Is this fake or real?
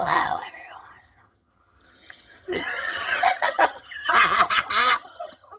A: fake